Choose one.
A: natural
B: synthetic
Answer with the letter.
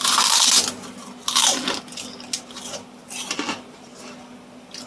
A